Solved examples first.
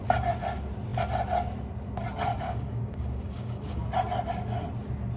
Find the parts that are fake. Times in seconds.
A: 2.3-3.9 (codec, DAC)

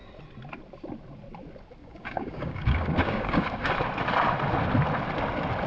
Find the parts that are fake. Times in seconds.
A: 1.8-3.7 (codec, DAC)

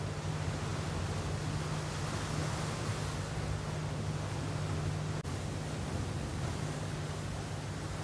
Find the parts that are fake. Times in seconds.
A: 6.3-6.9 (codec, DAC)

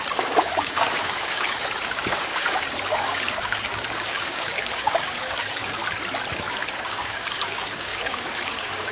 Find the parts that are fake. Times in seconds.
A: 0.0-5.8 (codec, DAC); 6.3-8.9

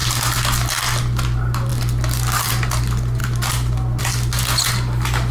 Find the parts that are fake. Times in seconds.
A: none

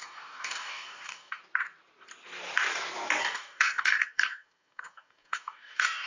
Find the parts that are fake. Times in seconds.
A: 0.0-1.4 (codec, DAC); 3.2-6.1